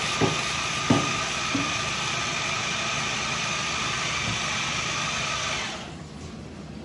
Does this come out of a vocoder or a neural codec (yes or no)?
no